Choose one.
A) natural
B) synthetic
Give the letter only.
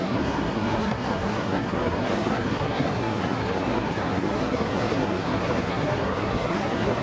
B